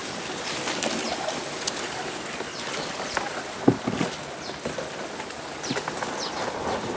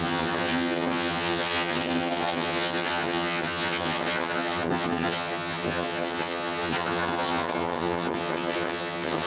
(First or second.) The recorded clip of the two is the first